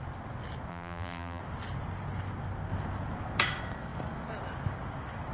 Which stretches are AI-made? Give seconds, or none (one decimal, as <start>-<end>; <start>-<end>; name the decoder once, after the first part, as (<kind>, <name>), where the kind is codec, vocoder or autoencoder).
0.7-1.4 (vocoder, BigVGAN v2)